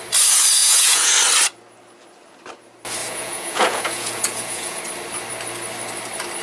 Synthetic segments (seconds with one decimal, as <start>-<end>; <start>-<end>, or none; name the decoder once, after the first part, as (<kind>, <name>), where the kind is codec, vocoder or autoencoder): 0.6-1.1 (vocoder, Vocos); 3.0-4.8